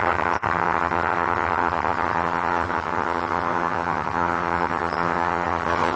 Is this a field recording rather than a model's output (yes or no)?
no